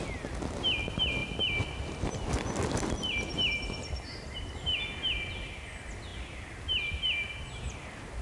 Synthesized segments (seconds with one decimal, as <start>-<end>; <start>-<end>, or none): none